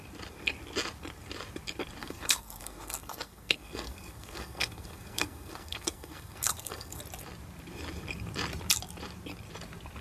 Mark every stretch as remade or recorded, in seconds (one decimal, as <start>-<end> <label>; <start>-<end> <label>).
0.0-2.0 recorded; 2.0-7.0 remade; 7.0-10.0 recorded